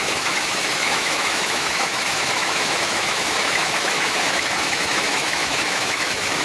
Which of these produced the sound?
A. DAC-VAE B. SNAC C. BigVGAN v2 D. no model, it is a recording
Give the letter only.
A